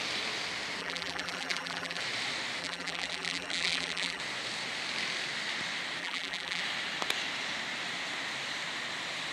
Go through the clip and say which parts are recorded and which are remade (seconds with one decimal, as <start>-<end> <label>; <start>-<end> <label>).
0.0-0.8 recorded; 0.8-2.0 remade; 2.0-2.6 recorded; 2.6-4.2 remade; 4.2-6.0 recorded; 6.0-6.6 remade; 6.6-9.3 recorded

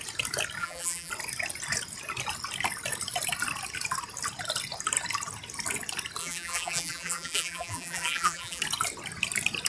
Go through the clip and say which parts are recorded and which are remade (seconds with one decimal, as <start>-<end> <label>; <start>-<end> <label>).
0.0-0.6 recorded; 0.6-1.1 remade; 1.1-6.2 recorded; 6.2-8.6 remade; 8.6-9.7 recorded